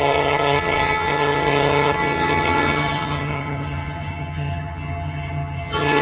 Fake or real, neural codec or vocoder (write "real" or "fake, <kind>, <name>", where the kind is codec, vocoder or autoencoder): fake, vocoder, HiFi-GAN